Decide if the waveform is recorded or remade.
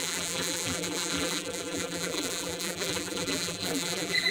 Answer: remade